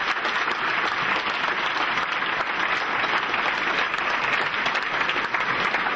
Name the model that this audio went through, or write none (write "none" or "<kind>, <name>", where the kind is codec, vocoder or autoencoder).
none